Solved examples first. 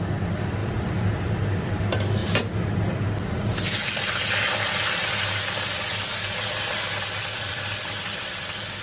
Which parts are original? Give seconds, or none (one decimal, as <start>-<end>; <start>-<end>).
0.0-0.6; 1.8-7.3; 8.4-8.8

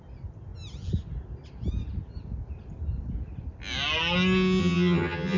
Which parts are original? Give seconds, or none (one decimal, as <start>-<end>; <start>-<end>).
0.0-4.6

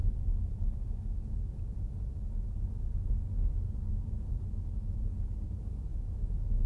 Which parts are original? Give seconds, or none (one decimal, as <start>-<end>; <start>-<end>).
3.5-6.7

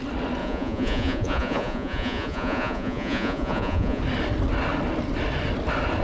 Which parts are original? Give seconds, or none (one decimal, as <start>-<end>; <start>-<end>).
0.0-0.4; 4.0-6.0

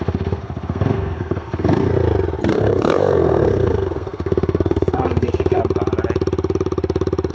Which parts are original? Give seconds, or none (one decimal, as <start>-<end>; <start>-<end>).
1.9-2.5; 5.6-7.3